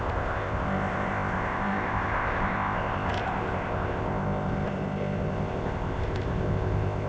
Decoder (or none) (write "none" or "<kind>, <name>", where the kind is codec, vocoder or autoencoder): codec, ZipCodec